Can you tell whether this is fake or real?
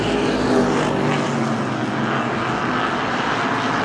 real